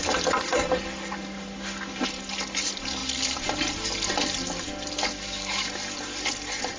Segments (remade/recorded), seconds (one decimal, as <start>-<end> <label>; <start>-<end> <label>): 0.0-5.1 recorded; 5.1-5.7 remade; 5.7-6.8 recorded

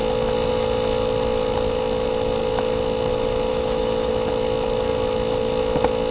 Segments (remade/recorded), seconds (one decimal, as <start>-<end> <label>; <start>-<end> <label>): 0.0-3.5 recorded; 3.5-4.1 remade; 4.1-6.1 recorded

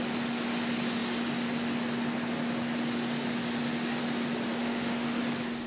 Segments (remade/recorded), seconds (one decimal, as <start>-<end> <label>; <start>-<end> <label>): 0.0-4.5 recorded; 4.5-5.2 remade; 5.2-5.7 recorded